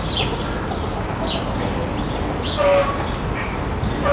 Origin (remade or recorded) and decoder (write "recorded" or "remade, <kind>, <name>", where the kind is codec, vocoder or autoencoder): recorded